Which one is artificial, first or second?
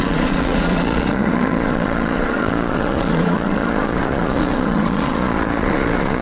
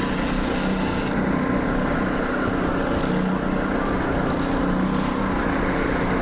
first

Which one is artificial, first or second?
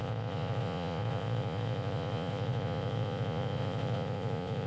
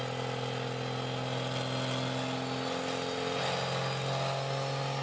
first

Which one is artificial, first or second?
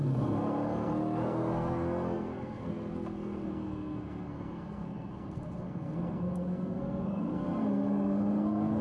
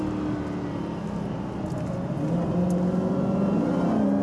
first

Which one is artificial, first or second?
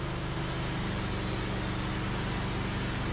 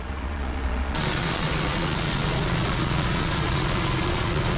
second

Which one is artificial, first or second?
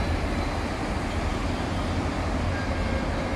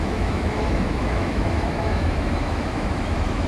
second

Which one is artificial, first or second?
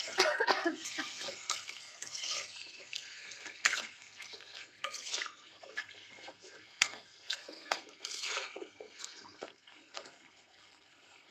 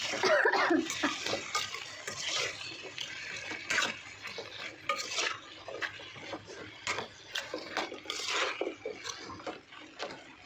first